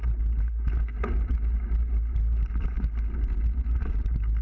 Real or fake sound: real